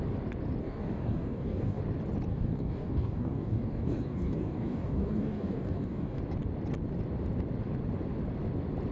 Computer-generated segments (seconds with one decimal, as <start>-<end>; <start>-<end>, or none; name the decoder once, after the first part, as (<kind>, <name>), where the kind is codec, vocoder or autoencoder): 0.6-1.8 (codec, DAC); 2.3-6.2